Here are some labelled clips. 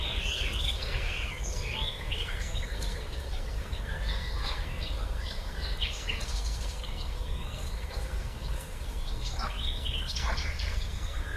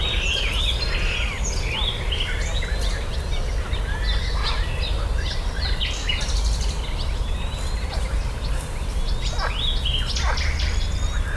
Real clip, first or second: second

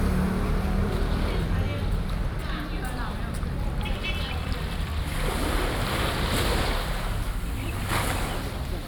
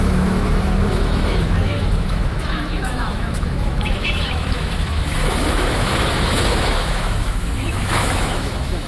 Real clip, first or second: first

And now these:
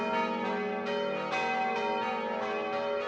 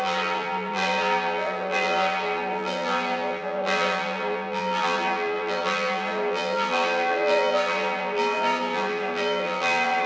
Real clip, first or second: first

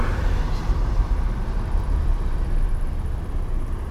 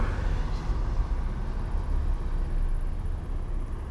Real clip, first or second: second